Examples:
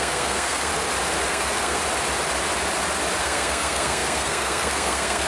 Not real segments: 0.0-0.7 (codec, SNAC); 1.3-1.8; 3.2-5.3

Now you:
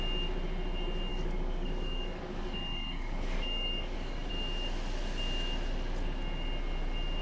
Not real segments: 1.1-4.3 (codec, DAC)